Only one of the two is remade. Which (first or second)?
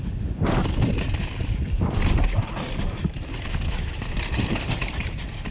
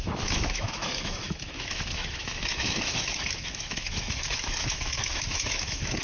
second